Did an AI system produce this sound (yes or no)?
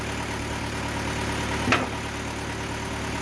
no